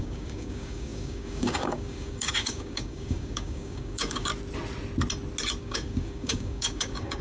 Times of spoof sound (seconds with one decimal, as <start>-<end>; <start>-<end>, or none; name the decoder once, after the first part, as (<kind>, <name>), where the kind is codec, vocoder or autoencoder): 0.0-4.3 (codec, DAC); 5.6-7.2